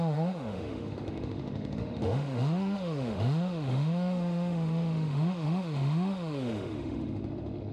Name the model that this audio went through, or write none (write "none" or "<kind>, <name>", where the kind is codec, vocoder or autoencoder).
autoencoder, DAC-VAE